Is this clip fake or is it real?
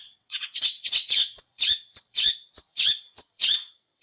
fake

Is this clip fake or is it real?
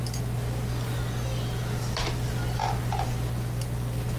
real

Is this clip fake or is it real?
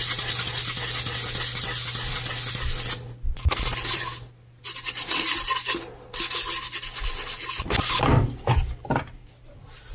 real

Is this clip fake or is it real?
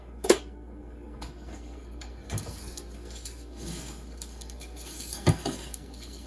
fake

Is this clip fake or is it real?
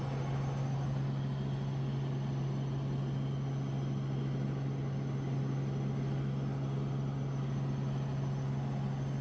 real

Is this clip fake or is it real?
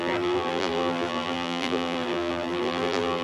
fake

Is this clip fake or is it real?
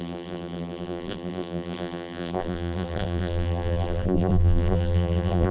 fake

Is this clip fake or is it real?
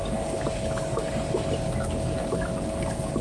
fake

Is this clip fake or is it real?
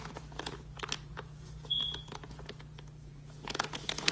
fake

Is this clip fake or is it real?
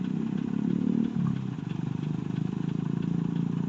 real